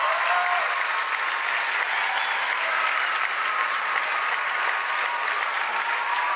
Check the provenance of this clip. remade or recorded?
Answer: recorded